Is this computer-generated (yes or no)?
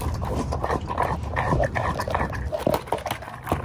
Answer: yes